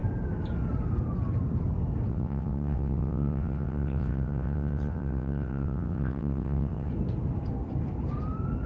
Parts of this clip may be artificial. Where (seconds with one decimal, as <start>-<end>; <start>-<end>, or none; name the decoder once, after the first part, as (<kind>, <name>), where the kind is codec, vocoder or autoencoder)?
2.1-6.9 (vocoder, WaveNeXt)